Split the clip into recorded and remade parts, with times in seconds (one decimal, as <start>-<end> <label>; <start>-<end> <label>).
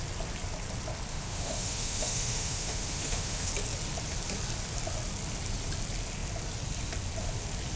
0.0-1.1 recorded; 1.1-3.5 remade; 3.5-7.8 recorded